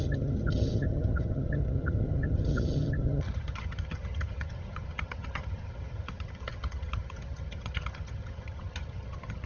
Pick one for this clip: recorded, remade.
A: remade